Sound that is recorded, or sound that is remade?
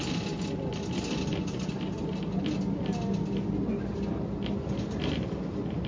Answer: recorded